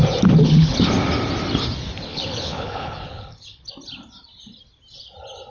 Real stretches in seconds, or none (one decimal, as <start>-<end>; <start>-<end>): 0.0-0.4; 0.9-2.1; 3.7-5.5